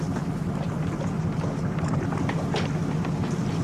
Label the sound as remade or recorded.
recorded